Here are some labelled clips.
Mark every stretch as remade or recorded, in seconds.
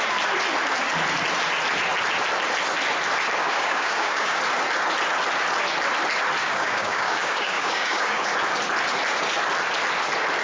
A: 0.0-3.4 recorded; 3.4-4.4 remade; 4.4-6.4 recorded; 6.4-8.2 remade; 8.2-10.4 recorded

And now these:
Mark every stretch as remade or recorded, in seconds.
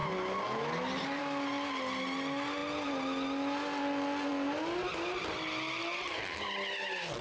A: 0.0-7.2 recorded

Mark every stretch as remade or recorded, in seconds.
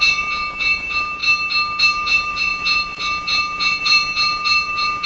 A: 0.0-1.2 remade; 1.2-1.8 recorded; 1.8-5.1 remade